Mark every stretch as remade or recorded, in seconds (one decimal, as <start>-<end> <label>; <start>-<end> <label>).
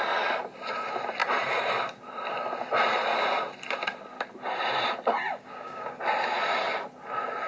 0.0-5.3 recorded; 5.3-6.0 remade; 6.0-7.5 recorded